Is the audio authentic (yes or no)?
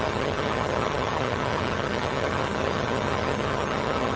no